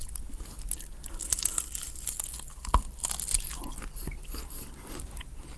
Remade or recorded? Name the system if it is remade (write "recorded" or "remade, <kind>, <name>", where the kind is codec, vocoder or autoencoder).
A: recorded